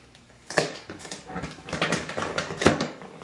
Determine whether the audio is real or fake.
fake